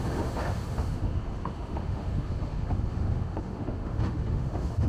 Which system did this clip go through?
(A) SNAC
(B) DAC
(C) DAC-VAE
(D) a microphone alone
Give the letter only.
C